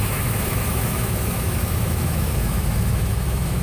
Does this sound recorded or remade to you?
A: remade